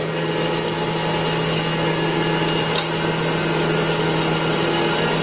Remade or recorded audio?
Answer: recorded